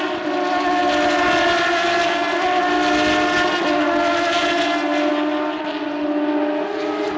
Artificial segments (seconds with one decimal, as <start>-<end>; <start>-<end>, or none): none